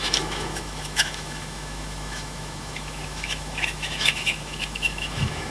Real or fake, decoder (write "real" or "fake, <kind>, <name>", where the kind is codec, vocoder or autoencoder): fake, autoencoder, DAC-VAE